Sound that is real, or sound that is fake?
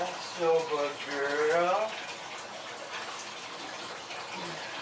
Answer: real